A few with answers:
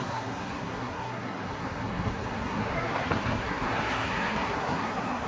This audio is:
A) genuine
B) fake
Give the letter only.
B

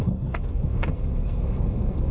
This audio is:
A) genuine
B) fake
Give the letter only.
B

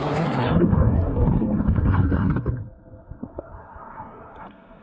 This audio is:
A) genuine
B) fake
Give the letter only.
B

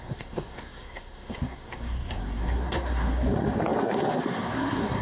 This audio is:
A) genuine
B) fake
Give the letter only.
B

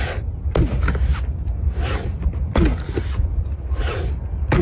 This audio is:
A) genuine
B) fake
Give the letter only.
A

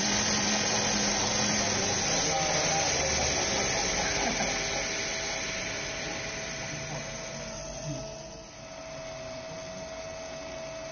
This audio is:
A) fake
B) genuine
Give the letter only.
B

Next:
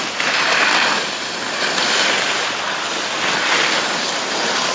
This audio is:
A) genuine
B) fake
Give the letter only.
A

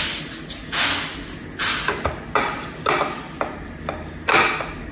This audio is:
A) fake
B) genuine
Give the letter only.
B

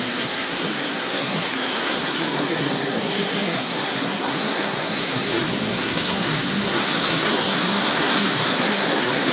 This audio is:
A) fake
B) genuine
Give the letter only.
A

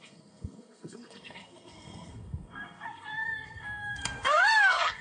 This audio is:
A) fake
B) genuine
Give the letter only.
A